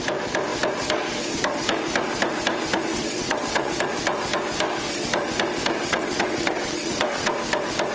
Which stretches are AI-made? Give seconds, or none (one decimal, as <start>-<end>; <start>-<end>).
2.9-3.7; 5.8-7.3